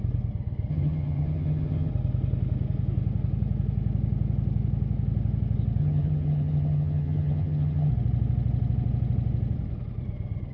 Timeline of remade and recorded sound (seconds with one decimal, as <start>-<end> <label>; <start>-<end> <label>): 0.0-0.7 recorded; 0.7-1.9 remade; 1.9-5.8 recorded; 5.8-7.9 remade; 7.9-10.5 recorded